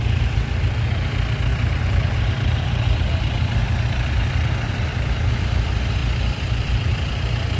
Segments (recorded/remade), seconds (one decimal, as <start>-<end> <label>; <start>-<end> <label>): 0.0-1.5 recorded; 1.5-5.3 remade; 5.3-6.0 recorded; 6.0-7.1 remade; 7.1-7.6 recorded